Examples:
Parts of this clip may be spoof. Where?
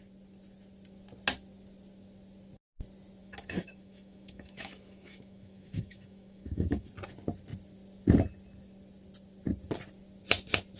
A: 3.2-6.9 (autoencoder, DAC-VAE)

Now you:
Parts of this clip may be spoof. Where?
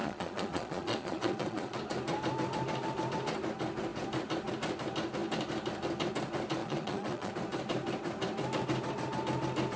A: 0.0-1.8 (vocoder, Vocos); 6.6-7.3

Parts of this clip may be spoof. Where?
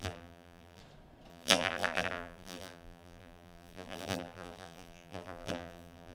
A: 0.0-0.8 (vocoder, BigVGAN v2); 1.3-6.1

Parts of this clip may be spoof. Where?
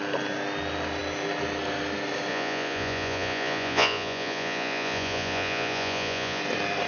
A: 2.3-6.4 (vocoder, Vocos)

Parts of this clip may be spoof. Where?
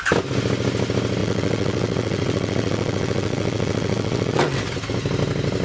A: 1.2-4.6 (vocoder, WaveNeXt)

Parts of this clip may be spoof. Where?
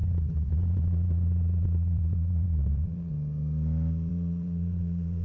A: 0.5-3.1 (vocoder, Vocos); 4.1-5.2